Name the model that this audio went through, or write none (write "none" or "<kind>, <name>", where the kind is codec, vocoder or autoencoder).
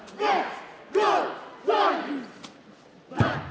none